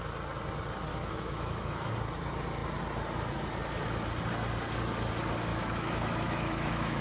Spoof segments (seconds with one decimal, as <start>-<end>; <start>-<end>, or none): 0.9-1.9; 5.5-7.0